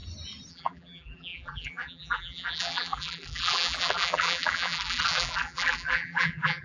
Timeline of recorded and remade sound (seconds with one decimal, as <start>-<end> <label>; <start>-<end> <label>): 0.0-0.5 recorded; 0.5-6.6 remade